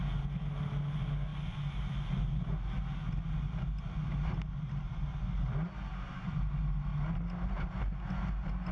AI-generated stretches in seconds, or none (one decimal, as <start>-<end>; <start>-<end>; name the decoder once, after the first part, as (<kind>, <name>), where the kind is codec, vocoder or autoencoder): 4.1-5.2 (vocoder, BigVGAN v2); 5.9-6.4